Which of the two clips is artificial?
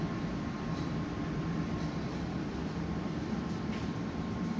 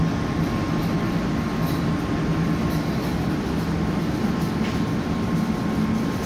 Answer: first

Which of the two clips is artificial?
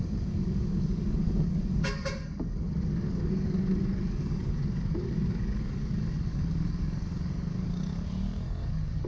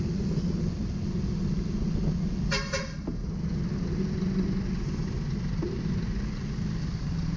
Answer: first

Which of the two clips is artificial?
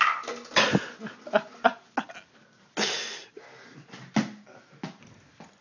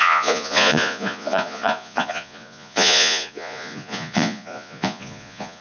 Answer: second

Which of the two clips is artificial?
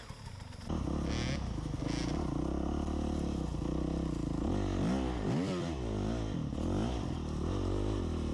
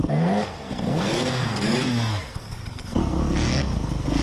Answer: second